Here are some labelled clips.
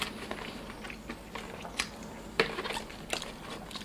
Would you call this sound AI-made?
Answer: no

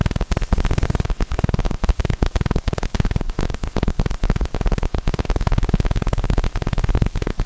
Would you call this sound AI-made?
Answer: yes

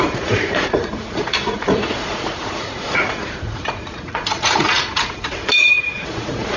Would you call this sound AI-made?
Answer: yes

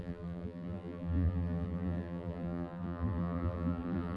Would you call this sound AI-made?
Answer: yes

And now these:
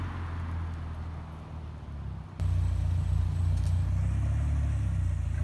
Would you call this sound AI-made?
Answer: no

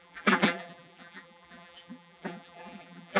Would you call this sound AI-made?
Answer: yes